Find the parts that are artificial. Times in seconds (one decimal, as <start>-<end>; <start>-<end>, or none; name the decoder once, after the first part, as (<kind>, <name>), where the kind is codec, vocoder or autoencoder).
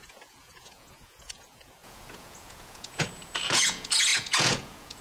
0.0-5.0 (vocoder, Vocos)